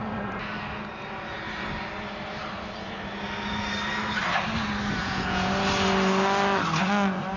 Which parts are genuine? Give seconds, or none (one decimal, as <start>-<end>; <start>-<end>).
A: 0.0-5.0; 5.5-7.4